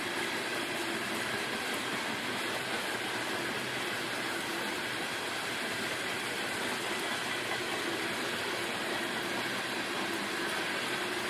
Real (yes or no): yes